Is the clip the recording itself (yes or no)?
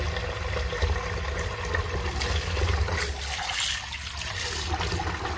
yes